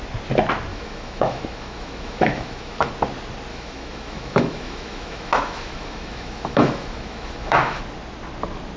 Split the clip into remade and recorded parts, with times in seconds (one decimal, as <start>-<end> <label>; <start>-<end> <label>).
0.0-0.7 recorded; 0.7-2.9 remade; 2.9-3.5 recorded; 3.5-7.8 remade; 7.8-8.8 recorded